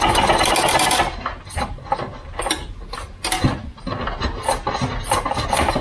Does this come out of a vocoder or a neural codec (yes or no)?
no